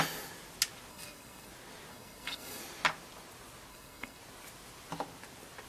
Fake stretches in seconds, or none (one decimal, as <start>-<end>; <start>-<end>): 0.9-1.5; 1.9-2.6; 3.7-4.2